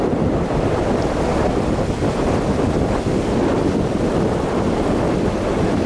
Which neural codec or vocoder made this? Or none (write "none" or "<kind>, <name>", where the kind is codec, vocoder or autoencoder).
none